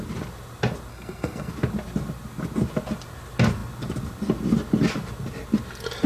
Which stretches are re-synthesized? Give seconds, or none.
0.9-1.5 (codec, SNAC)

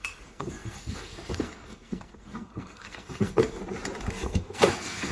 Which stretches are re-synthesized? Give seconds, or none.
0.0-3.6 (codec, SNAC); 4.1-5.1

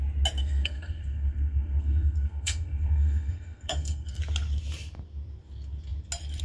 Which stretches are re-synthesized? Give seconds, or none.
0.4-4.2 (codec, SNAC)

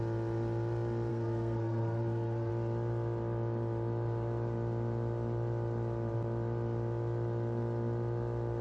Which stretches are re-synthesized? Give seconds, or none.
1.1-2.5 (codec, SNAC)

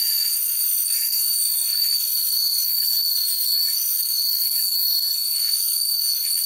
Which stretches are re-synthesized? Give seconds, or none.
0.0-6.5 (codec, SNAC)